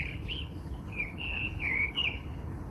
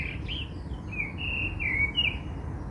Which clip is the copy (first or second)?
first